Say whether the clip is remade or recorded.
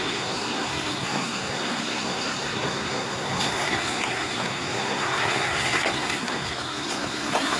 remade